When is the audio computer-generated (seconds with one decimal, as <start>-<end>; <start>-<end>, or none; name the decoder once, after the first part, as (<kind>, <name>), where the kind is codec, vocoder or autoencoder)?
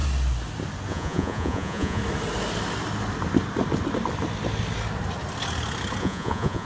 0.9-2.0 (vocoder, Vocos); 6.0-6.7